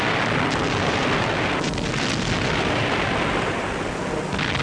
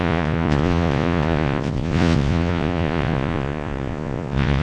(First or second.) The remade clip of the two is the second